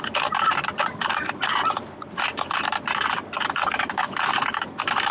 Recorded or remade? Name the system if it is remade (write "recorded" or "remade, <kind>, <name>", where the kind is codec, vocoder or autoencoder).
remade, vocoder, BigVGAN v2